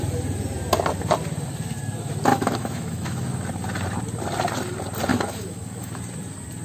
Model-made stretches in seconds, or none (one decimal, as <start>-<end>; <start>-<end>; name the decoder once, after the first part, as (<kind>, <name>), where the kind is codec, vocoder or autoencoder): 2.3-3.3 (autoencoder, DAC-VAE); 5.1-6.0